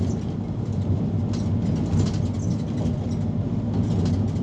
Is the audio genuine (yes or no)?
yes